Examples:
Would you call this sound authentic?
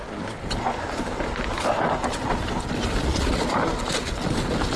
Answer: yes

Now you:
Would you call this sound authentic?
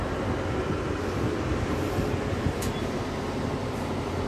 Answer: yes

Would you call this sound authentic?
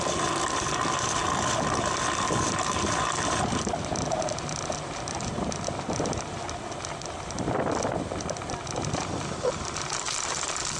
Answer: yes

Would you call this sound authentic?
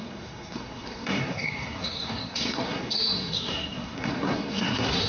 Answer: no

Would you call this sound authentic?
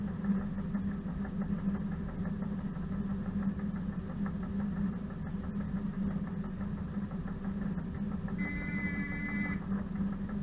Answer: yes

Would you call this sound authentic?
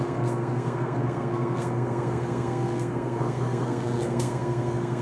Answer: no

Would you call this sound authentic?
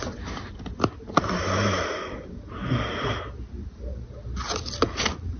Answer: yes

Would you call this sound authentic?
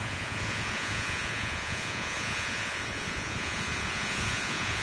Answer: no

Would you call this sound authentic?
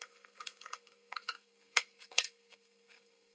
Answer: no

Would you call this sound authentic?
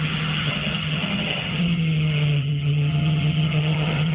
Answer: no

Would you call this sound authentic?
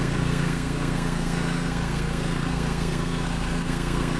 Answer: no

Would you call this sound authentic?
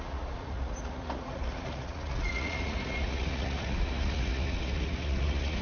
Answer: no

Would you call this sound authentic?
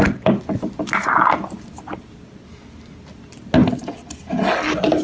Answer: yes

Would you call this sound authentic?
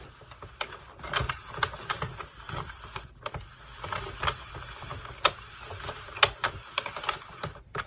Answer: yes